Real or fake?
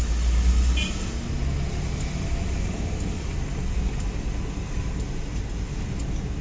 real